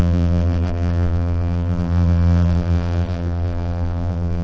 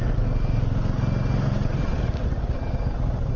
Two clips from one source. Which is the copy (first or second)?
first